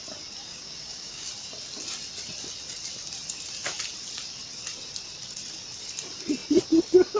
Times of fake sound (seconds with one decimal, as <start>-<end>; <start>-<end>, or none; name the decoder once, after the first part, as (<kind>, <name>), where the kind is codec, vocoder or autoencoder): 0.4-1.3 (codec, DAC)